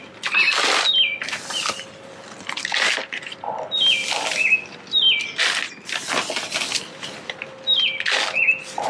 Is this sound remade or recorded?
recorded